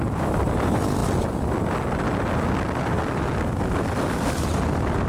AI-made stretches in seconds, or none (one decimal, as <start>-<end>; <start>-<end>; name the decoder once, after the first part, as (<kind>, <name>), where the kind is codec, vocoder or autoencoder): none